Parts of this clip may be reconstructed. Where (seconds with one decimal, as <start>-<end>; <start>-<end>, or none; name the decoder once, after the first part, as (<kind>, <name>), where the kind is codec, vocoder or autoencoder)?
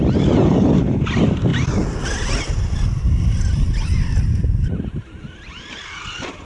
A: 0.0-1.5 (vocoder, BigVGAN v2); 2.5-4.4; 5.2-6.4